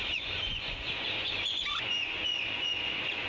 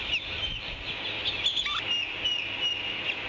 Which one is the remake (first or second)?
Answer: first